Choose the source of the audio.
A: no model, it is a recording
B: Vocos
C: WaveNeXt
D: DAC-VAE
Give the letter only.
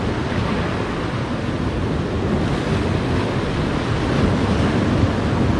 A